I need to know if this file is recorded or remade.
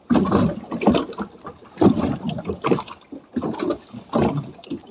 recorded